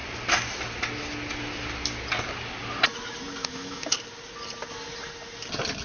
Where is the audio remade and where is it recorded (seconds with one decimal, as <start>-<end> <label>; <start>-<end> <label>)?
0.0-3.4 recorded; 3.4-3.9 remade; 3.9-5.8 recorded